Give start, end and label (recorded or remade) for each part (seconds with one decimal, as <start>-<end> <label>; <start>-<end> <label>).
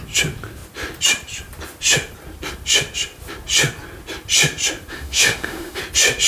0.0-4.9 recorded; 4.9-5.8 remade; 5.8-6.3 recorded